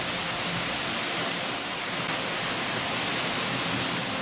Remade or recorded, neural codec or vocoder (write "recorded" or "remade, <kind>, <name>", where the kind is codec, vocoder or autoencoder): recorded